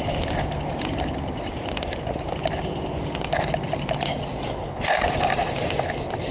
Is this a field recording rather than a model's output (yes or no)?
yes